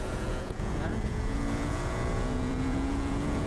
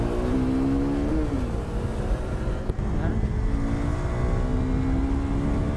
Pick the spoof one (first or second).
first